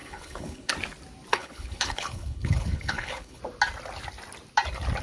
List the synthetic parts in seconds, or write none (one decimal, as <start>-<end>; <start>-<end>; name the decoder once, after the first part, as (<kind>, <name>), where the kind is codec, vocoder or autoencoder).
0.0-0.7 (codec, HILCodec); 1.3-3.4

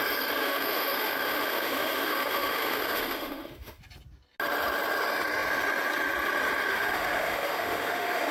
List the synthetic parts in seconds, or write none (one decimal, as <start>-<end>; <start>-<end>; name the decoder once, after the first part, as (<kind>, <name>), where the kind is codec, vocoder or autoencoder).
0.4-3.8 (autoencoder, DAC-VAE); 6.7-8.3

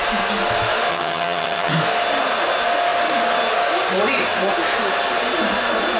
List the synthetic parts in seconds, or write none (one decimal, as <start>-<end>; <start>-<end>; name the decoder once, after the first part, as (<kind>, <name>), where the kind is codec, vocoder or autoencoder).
0.9-1.7 (vocoder, HiFi-GAN)